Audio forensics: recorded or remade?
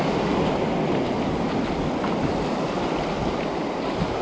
recorded